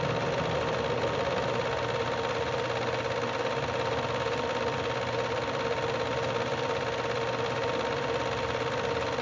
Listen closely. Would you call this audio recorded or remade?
recorded